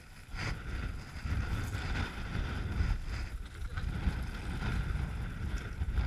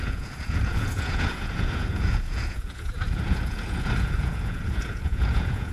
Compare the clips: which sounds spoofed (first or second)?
second